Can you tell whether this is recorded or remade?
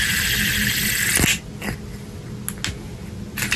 recorded